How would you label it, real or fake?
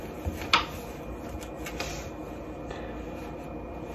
real